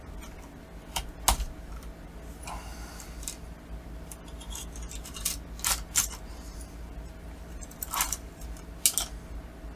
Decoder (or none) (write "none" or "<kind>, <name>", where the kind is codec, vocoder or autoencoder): none